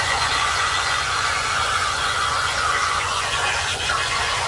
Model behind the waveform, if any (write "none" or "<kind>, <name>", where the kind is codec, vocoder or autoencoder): vocoder, Vocos